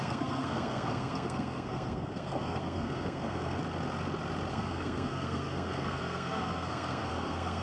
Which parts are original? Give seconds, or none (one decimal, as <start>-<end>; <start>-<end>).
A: 3.6-4.5